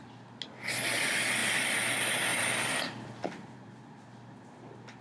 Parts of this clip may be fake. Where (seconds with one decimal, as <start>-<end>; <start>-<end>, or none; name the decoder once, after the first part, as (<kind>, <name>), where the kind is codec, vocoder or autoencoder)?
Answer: 1.4-1.9 (vocoder, BigVGAN v2); 2.3-3.8